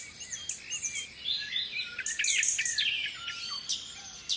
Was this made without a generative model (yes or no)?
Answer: yes